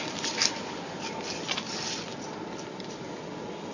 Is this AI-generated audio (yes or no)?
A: yes